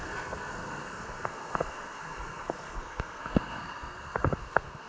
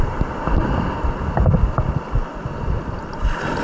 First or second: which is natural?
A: second